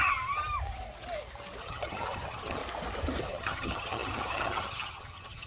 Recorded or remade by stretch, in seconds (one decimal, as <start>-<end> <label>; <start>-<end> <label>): 0.0-0.4 remade; 0.4-1.6 recorded; 1.6-2.6 remade; 2.6-3.2 recorded; 3.2-5.5 remade

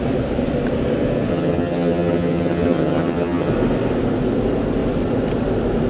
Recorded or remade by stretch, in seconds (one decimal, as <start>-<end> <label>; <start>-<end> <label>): 0.0-1.3 recorded; 1.3-3.5 remade; 3.5-5.9 recorded

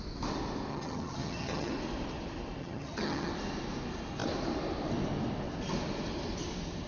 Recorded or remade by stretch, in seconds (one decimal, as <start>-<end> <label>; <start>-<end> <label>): 0.0-0.7 recorded; 0.7-1.7 remade; 1.7-2.6 recorded; 2.6-3.3 remade; 3.3-6.9 recorded

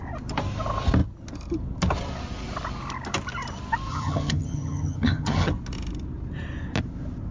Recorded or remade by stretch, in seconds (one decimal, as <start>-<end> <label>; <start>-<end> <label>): 0.0-3.9 recorded; 3.9-5.5 remade; 5.5-7.3 recorded

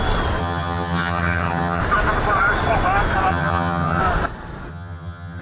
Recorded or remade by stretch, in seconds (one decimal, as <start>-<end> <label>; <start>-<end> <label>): 0.0-0.4 recorded; 0.4-1.8 remade; 1.8-3.3 recorded; 3.3-4.0 remade; 4.0-4.7 recorded; 4.7-5.4 remade